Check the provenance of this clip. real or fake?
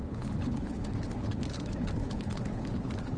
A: fake